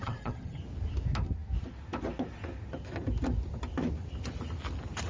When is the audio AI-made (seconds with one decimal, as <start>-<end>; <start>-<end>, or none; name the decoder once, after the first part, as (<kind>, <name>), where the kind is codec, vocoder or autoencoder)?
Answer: 0.0-0.6 (vocoder, HiFi-GAN)